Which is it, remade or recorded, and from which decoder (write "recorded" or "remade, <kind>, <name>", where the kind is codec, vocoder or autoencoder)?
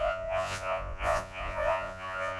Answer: remade, vocoder, Vocos